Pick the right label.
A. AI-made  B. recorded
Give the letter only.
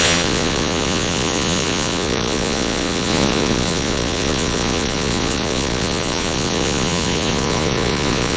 A